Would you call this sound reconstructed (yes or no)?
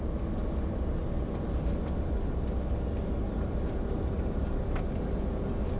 no